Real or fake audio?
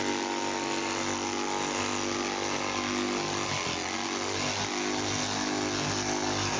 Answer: real